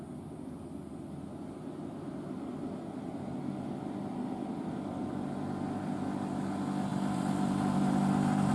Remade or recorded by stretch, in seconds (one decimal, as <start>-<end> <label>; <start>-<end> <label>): 0.0-6.9 recorded; 6.9-8.5 remade

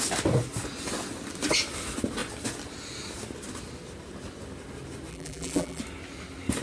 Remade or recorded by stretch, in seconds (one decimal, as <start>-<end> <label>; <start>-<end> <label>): 0.0-5.1 recorded; 5.1-5.8 remade; 5.8-6.6 recorded

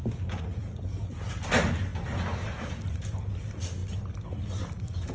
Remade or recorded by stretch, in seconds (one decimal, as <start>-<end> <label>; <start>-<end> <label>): 0.0-5.1 recorded

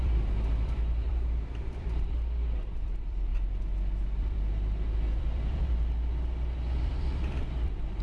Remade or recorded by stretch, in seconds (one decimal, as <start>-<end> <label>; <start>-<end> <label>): 0.0-3.3 remade; 3.3-4.2 recorded; 4.2-5.7 remade; 5.7-6.8 recorded; 6.8-8.0 remade

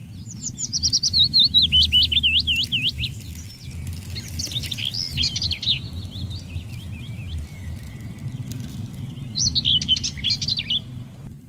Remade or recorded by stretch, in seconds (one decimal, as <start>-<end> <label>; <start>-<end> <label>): 0.0-1.6 remade; 1.6-5.1 recorded; 5.1-5.7 remade; 5.7-11.5 recorded

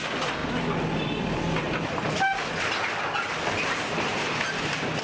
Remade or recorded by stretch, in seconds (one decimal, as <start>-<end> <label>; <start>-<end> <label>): 0.0-0.4 recorded; 0.4-2.6 remade; 2.6-4.1 recorded; 4.1-5.0 remade

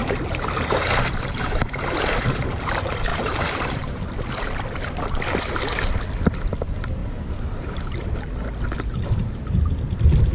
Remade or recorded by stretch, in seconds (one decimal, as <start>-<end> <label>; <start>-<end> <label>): 0.0-2.6 remade; 2.6-3.1 recorded; 3.1-4.1 remade; 4.1-7.0 recorded; 7.0-8.2 remade; 8.2-10.3 recorded

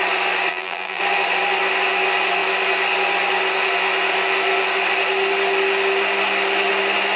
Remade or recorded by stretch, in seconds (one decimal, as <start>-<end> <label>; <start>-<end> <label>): 0.0-0.5 recorded; 0.5-1.0 remade; 1.0-7.2 recorded